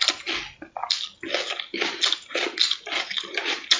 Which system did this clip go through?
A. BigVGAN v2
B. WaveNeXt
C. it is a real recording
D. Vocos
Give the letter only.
C